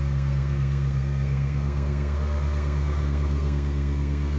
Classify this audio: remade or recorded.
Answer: remade